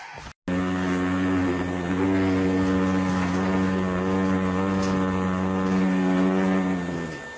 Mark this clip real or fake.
real